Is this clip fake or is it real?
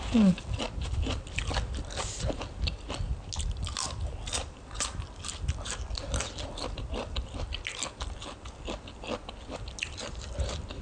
real